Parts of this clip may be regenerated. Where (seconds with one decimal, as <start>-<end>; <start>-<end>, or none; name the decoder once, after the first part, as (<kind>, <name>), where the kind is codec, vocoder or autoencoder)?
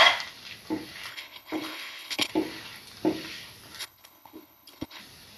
1.1-2.3 (codec, HILCodec); 3.8-5.0